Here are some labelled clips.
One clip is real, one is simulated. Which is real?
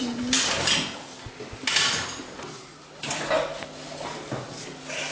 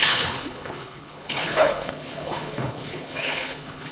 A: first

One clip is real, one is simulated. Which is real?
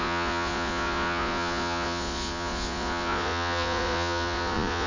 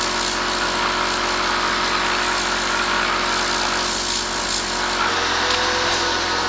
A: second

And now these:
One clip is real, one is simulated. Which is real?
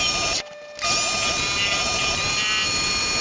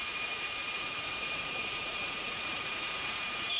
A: first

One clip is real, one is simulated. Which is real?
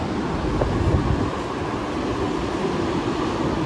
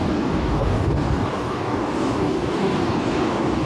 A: first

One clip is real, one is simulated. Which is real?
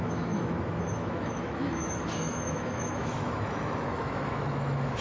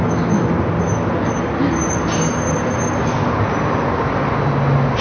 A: second